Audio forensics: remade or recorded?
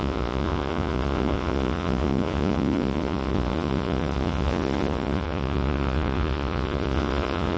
remade